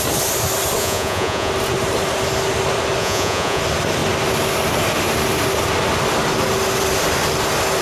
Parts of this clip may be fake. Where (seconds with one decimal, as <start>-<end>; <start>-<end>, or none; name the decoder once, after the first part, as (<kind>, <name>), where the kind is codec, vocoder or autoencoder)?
0.8-1.5 (vocoder, Vocos); 3.0-3.6